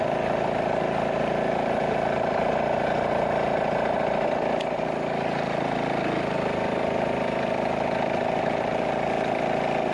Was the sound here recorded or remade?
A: recorded